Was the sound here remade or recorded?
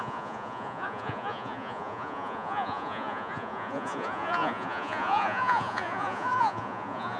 remade